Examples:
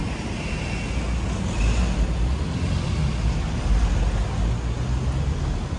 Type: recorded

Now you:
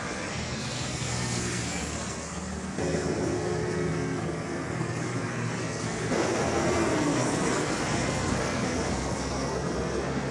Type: remade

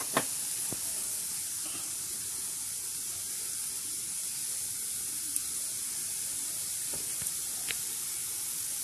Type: recorded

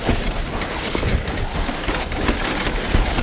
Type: recorded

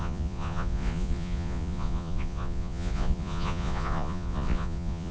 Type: remade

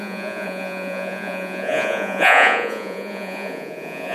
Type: remade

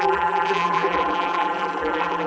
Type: remade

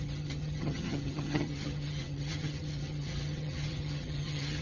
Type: remade